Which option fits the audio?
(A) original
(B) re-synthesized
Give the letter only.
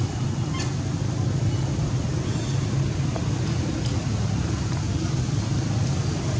A